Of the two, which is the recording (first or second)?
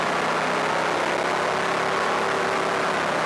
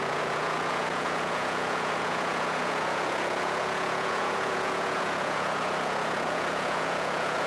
first